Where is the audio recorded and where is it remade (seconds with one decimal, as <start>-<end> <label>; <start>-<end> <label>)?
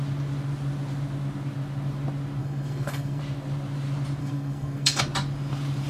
0.0-2.4 recorded; 2.4-3.2 remade; 3.2-4.2 recorded; 4.2-5.0 remade; 5.0-5.9 recorded